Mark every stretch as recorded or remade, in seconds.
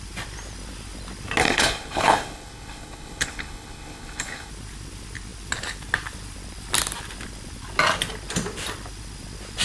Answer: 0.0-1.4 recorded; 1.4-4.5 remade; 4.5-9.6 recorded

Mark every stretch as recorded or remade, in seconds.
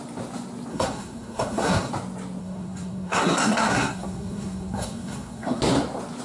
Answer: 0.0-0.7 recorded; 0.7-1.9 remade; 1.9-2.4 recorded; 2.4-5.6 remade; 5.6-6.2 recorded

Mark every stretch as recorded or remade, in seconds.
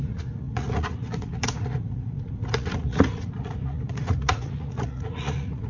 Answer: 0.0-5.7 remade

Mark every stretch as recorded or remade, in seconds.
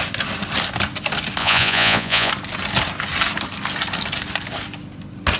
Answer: 0.0-1.4 recorded; 1.4-2.3 remade; 2.3-5.4 recorded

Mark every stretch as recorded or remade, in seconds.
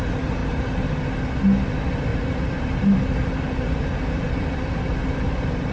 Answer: 0.0-0.4 recorded; 0.4-1.0 remade; 1.0-2.1 recorded; 2.1-5.7 remade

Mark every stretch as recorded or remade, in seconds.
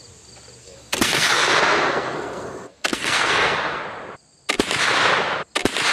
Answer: 0.0-0.6 recorded; 0.6-3.8 remade; 3.8-5.9 recorded